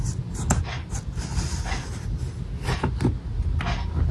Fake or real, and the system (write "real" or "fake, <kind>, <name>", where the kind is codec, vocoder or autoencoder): real